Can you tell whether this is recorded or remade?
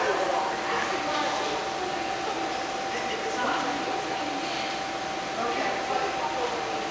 recorded